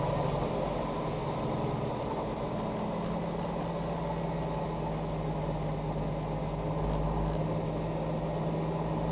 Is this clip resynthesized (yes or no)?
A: no